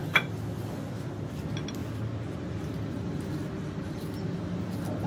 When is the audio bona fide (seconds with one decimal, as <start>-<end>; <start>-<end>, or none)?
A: 0.0-5.1